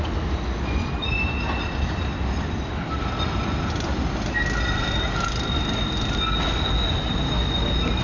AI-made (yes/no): no